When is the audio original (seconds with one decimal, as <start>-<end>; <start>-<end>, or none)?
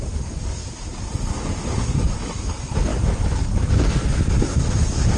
0.6-1.8; 2.9-3.4; 4.0-5.2